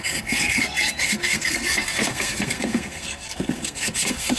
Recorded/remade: remade